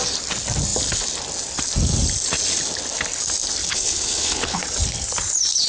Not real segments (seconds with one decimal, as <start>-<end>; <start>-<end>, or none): 3.7-4.6